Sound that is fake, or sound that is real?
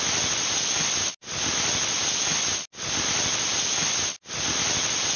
real